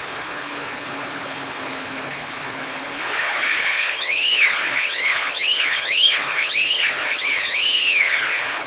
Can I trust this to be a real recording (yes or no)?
no